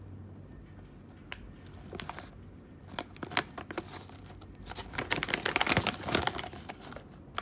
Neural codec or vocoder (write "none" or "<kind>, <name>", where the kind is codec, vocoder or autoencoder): none